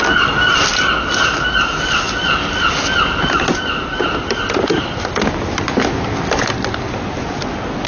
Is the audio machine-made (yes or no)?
no